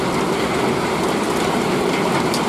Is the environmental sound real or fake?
real